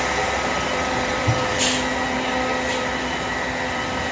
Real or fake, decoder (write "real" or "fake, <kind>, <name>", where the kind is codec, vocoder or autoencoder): real